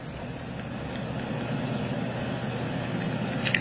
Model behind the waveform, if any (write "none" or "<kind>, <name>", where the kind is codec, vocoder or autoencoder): none